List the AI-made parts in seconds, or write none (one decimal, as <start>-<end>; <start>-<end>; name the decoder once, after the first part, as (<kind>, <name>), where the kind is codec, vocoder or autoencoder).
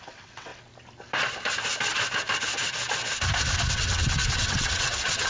0.0-0.5 (vocoder, WaveNeXt); 3.7-5.3